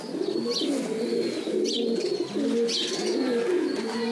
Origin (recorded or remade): recorded